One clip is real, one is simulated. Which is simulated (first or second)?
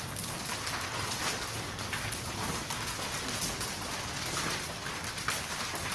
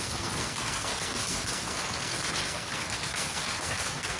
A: second